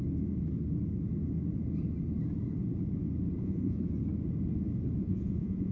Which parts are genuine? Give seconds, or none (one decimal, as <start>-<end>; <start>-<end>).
0.0-3.4; 3.8-5.0